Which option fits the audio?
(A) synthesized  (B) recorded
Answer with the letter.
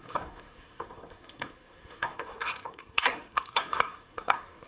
A